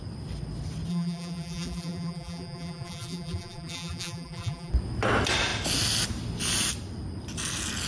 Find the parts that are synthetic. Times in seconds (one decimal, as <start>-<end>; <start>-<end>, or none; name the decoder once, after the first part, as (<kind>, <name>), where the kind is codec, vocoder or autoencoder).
0.9-4.7 (vocoder, BigVGAN v2)